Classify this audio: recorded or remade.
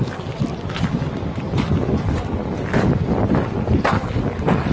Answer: recorded